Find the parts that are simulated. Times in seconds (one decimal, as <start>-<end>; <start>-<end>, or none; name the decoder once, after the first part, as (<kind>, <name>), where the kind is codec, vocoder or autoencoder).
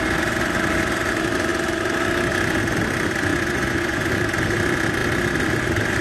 3.3-4.1 (vocoder, Vocos)